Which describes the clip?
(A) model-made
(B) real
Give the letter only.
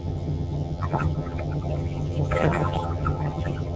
A